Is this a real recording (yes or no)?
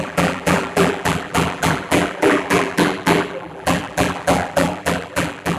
no